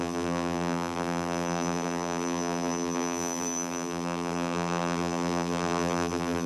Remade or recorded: remade